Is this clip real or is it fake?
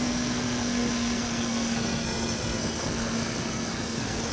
fake